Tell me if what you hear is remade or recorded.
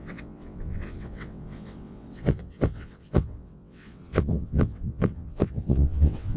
remade